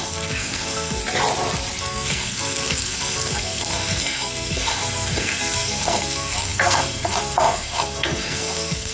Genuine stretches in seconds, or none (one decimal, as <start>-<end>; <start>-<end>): 1.0-1.8